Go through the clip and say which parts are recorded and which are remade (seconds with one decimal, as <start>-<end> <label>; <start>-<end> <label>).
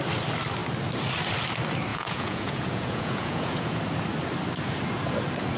0.0-1.9 recorded; 1.9-3.8 remade; 3.8-5.6 recorded